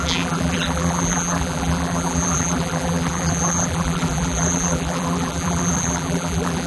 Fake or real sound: fake